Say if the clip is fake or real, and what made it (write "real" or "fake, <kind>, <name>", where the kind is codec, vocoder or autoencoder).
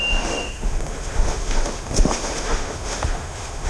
fake, autoencoder, DAC-VAE